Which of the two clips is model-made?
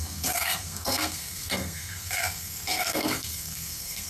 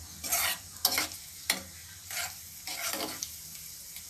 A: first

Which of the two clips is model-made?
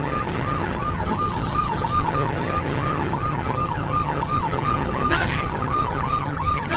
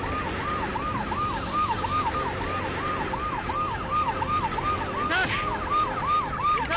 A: first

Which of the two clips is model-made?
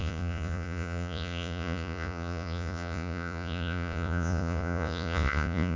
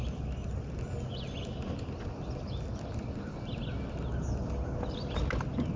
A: first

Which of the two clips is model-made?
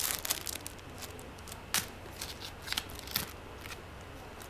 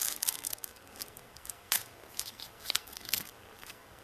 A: second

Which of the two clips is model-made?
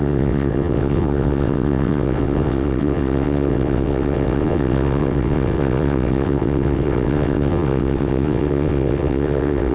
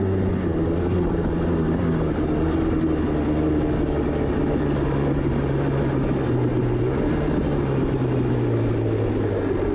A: first